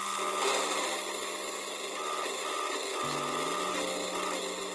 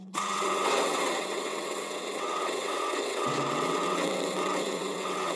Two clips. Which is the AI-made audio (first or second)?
second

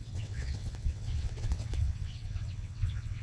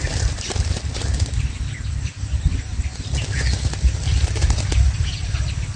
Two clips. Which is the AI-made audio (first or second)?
first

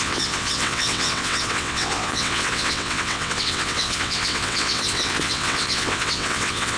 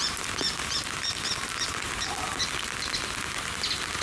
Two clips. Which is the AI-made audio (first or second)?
first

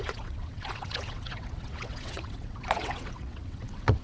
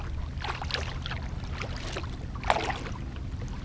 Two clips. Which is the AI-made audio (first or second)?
first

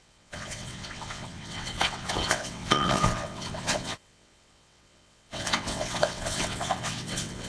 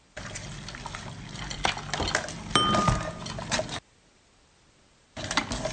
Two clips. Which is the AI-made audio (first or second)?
first